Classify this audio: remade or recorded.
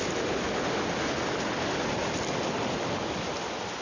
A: recorded